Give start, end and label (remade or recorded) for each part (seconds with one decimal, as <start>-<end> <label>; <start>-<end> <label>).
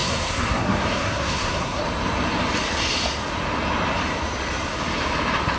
0.0-1.8 remade; 1.8-5.6 recorded